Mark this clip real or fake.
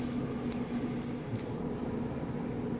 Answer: real